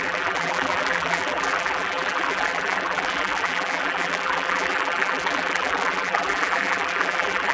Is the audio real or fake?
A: fake